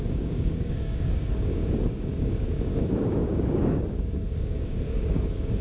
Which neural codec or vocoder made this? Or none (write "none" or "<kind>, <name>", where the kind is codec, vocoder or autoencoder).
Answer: codec, DAC